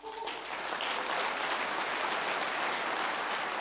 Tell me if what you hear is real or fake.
real